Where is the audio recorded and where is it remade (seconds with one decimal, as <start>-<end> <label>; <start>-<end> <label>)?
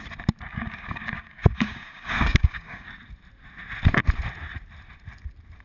0.0-0.5 recorded; 0.5-3.0 remade; 3.0-5.6 recorded